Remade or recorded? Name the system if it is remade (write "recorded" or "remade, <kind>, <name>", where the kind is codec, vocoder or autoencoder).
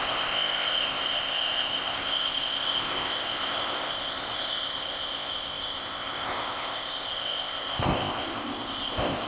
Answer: remade, codec, ZipCodec